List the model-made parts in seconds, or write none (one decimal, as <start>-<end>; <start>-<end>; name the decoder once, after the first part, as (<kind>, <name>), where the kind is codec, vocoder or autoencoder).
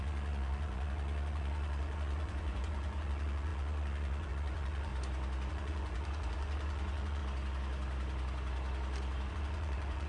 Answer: 0.0-4.9 (vocoder, Vocos); 5.5-7.2; 9.3-10.1